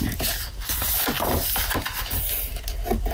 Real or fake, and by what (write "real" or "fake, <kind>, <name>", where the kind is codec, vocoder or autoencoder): real